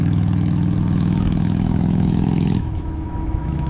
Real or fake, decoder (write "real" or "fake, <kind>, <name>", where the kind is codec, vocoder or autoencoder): fake, autoencoder, DAC-VAE